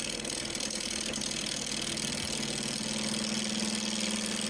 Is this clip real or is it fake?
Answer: real